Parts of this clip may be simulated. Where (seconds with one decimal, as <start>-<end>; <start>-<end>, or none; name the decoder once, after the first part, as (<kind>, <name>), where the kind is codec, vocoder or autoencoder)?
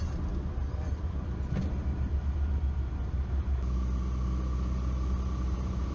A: none